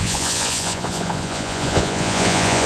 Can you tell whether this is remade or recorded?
remade